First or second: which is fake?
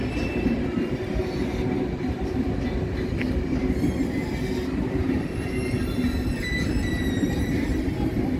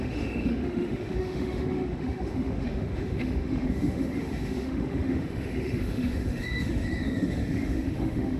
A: second